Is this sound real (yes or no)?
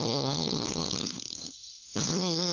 no